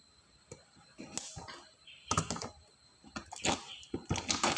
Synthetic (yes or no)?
no